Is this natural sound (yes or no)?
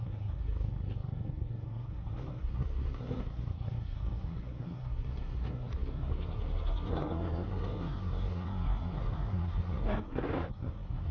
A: no